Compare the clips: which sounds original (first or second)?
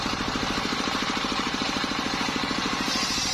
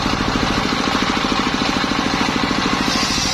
second